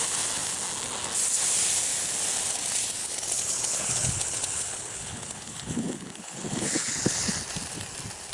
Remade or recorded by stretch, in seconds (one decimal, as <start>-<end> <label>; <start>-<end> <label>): 0.0-3.0 recorded; 3.0-7.3 remade; 7.3-8.3 recorded